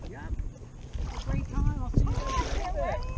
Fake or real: real